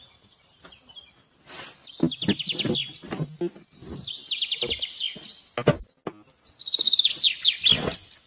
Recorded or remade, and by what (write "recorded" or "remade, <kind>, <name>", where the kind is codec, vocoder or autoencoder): recorded